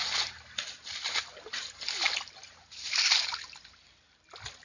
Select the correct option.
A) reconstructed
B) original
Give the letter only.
B